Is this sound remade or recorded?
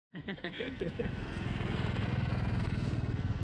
remade